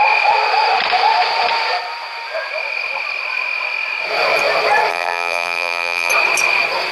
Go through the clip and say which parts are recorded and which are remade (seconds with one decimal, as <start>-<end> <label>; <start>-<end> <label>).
0.0-4.9 recorded; 4.9-6.1 remade; 6.1-6.9 recorded